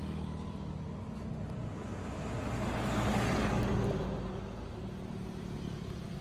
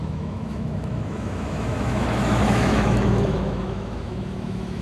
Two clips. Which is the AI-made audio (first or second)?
second